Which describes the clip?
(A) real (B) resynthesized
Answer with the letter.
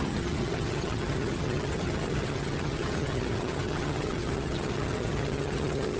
B